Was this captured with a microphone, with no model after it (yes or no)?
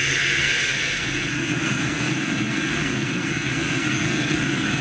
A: no